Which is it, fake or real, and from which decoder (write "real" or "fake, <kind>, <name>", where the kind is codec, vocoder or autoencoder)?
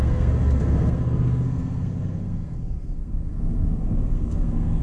fake, codec, SNAC